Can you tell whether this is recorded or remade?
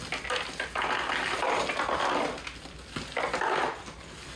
recorded